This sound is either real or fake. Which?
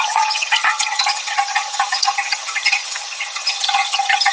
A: fake